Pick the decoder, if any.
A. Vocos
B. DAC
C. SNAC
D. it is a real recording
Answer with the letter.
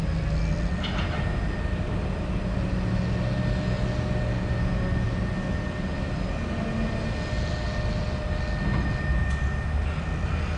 D